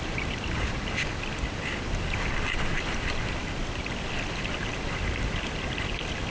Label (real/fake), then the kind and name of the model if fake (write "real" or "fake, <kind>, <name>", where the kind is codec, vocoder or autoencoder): real